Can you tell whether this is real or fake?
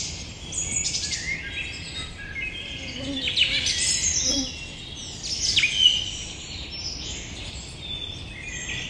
real